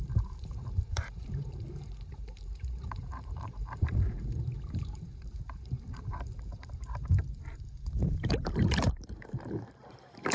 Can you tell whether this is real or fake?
fake